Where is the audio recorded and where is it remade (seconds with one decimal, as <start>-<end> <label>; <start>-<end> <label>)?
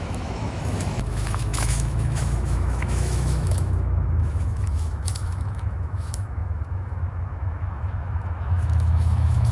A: 0.0-9.5 remade